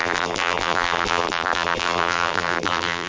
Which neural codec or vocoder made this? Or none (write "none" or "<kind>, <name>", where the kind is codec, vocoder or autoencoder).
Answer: vocoder, BigVGAN v2